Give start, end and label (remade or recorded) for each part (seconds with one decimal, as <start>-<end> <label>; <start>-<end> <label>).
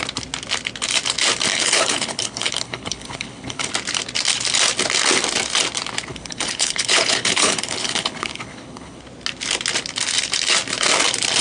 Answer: 0.0-1.5 recorded; 1.5-3.7 remade; 3.7-6.1 recorded; 6.1-9.0 remade; 9.0-11.4 recorded